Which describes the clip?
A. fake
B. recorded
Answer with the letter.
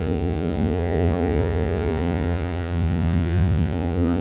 A